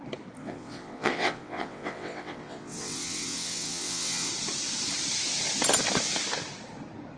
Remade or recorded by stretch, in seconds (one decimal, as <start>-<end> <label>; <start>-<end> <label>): 0.0-0.4 recorded; 0.4-4.3 remade; 4.3-7.2 recorded